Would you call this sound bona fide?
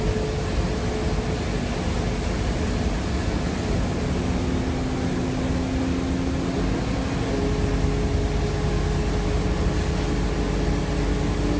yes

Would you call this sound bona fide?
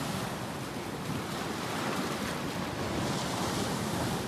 no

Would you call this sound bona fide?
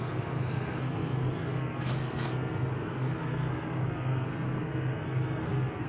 no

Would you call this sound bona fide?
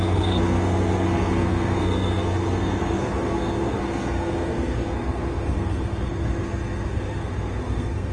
no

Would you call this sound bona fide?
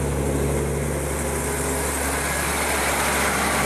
yes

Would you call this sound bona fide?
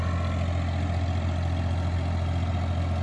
yes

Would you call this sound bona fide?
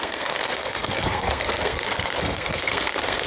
no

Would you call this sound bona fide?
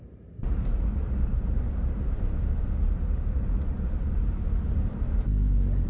no